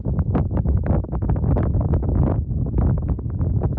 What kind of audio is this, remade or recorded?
recorded